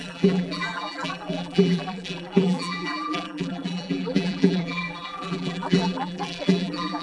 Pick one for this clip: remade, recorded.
remade